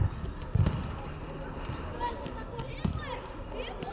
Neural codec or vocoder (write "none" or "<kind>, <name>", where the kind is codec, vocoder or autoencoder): none